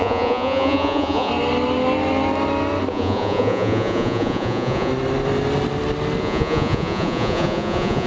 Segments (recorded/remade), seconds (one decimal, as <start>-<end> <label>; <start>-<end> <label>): 0.0-1.3 remade; 1.3-2.9 recorded; 2.9-4.9 remade; 4.9-6.2 recorded; 6.2-8.1 remade